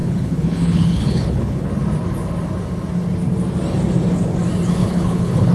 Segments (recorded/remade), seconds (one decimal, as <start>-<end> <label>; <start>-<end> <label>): 0.0-1.7 remade; 1.7-4.8 recorded; 4.8-5.5 remade